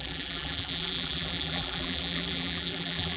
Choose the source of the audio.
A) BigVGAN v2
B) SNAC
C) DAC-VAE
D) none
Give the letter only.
A